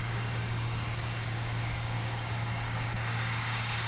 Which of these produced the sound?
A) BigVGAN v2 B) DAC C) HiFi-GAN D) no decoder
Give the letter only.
B